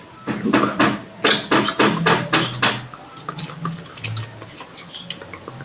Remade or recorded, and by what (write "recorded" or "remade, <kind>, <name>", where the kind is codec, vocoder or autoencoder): recorded